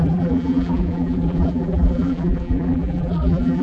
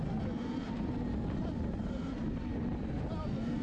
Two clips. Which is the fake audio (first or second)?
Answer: first